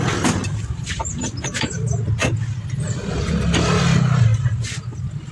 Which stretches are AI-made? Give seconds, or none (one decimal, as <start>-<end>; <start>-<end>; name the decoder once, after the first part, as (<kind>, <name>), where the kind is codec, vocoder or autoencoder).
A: none